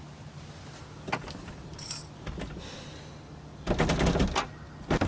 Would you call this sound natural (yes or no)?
yes